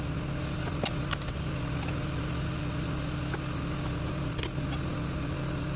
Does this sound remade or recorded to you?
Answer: recorded